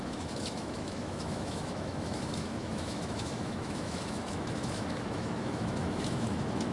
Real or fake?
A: fake